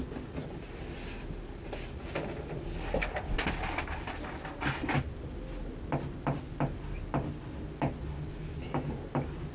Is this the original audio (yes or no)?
yes